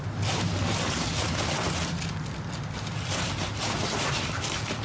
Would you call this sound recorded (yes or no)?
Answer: yes